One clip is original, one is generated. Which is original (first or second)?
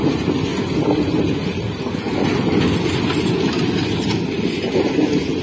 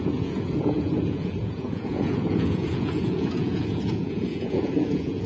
first